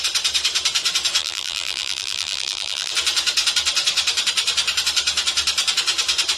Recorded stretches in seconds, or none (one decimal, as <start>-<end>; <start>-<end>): 0.0-1.2; 2.9-6.4